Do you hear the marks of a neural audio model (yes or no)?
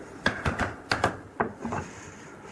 no